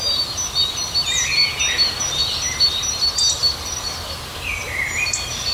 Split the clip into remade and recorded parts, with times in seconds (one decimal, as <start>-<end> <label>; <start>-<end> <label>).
0.0-5.5 recorded